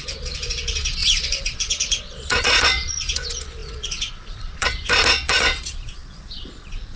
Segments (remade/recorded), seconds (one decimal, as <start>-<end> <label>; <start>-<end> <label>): 0.0-7.0 remade